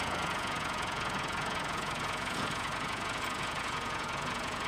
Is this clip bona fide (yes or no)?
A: no